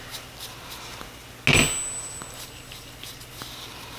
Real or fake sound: real